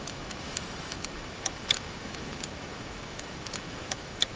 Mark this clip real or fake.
fake